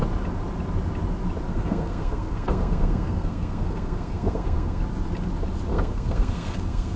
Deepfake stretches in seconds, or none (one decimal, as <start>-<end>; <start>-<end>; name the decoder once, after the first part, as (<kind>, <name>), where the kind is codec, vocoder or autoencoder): 1.5-4.8 (codec, SNAC); 5.7-7.0